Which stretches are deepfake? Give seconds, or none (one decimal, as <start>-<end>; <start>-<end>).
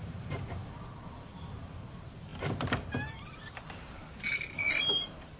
0.0-4.0; 4.9-5.4